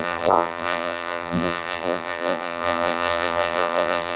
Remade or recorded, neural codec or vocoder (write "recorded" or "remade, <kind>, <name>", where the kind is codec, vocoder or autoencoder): remade, vocoder, BigVGAN v2